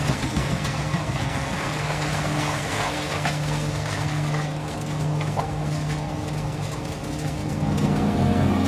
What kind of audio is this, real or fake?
fake